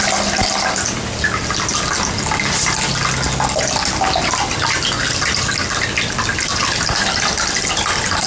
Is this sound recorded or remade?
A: recorded